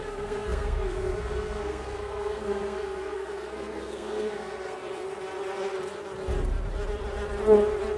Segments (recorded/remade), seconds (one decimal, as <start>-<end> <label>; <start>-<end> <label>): 0.0-4.8 remade; 4.8-8.0 recorded

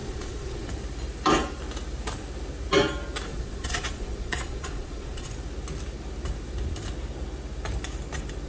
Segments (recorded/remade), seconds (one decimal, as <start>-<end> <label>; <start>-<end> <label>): 0.0-0.7 remade; 0.7-3.3 recorded; 3.3-5.3 remade; 5.3-8.5 recorded